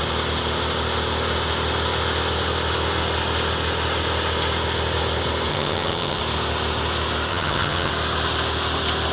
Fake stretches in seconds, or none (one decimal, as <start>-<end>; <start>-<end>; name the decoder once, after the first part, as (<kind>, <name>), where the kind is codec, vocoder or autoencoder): 5.5-6.2 (vocoder, HiFi-GAN); 7.3-7.9